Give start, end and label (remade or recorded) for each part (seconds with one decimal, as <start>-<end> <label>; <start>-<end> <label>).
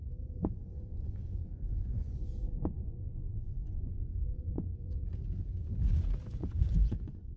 0.0-5.1 remade; 5.1-6.3 recorded; 6.3-7.4 remade